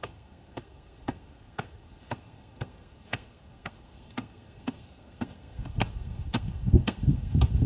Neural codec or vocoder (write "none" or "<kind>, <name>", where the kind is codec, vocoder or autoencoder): codec, SNAC